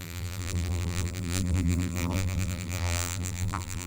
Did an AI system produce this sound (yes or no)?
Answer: yes